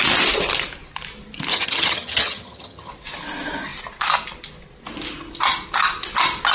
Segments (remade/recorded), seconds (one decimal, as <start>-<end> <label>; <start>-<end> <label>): 0.0-1.5 recorded; 1.5-2.9 remade; 2.9-6.5 recorded